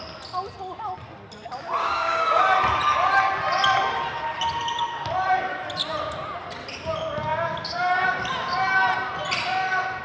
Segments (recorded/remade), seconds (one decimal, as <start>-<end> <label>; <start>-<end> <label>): 0.0-1.8 recorded; 1.8-2.4 remade; 2.4-10.0 recorded